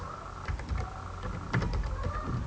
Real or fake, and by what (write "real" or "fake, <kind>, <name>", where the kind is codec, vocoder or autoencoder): real